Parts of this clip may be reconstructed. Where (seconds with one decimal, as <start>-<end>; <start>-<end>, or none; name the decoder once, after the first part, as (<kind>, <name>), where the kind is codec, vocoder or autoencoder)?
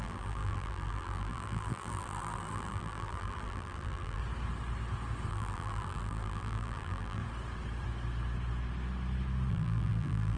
0.0-4.2 (vocoder, BigVGAN v2); 5.3-7.2; 9.5-10.4